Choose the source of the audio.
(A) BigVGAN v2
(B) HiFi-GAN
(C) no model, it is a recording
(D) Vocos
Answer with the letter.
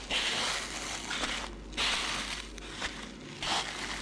C